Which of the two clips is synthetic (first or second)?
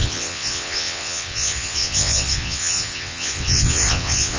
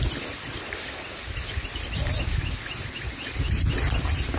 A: first